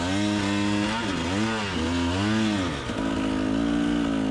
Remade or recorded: recorded